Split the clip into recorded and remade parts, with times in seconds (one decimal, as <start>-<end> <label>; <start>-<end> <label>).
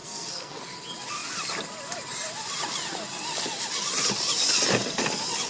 0.0-0.6 remade; 0.6-5.5 recorded